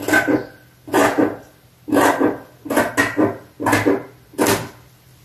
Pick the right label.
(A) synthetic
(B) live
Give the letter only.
B